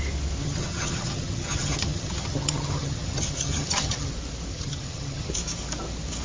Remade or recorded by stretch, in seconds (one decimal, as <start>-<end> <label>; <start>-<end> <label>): 0.0-0.4 recorded; 0.4-4.1 remade; 4.1-4.5 recorded; 4.5-5.3 remade; 5.3-6.2 recorded